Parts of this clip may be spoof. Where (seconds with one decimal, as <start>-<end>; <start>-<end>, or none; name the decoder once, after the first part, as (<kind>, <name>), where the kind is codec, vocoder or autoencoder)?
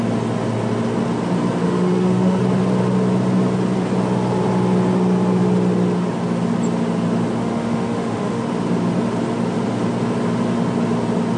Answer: 1.6-2.4 (autoencoder, DAC-VAE); 7.4-8.4